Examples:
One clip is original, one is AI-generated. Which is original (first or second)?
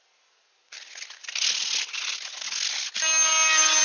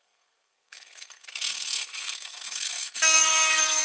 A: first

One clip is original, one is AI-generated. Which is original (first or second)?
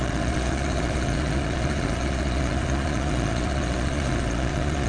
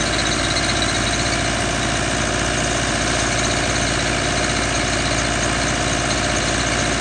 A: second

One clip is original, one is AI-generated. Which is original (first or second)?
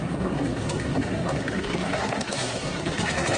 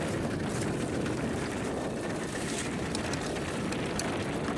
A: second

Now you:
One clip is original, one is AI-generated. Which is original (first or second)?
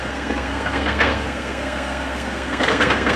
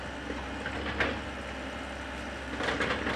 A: second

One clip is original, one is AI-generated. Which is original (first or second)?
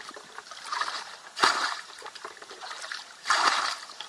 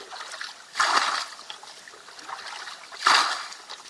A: second